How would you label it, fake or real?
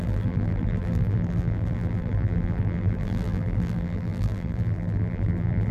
fake